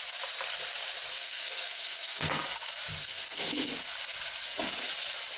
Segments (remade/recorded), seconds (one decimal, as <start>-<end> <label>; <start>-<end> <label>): 0.0-1.1 recorded; 1.1-2.4 remade; 2.4-3.0 recorded; 3.0-3.7 remade; 3.7-5.4 recorded